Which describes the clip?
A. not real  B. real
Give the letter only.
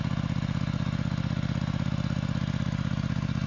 B